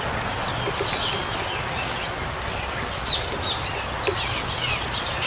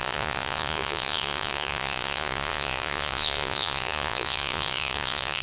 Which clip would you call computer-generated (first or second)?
second